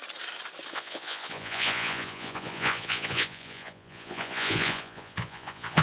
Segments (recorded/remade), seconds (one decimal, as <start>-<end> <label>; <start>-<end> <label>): 0.0-0.7 recorded; 0.7-5.8 remade